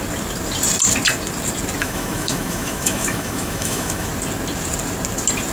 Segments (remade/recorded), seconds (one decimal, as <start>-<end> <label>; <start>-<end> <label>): 0.0-1.8 recorded; 1.8-4.1 remade; 4.1-5.5 recorded